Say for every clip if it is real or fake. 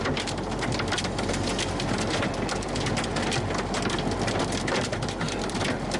real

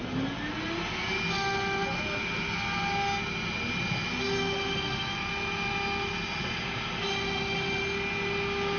real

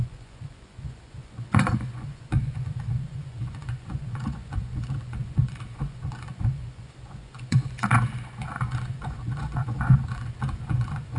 fake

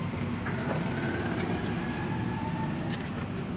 real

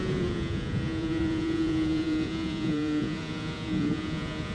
fake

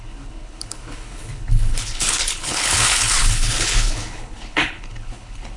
fake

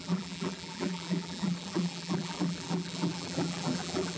fake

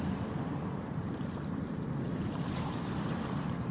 fake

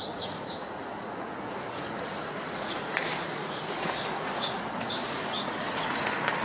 fake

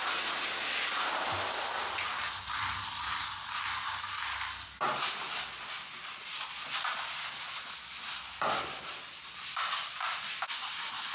real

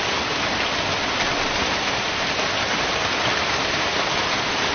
real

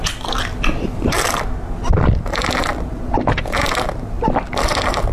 real